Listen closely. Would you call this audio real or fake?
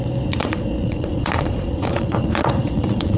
fake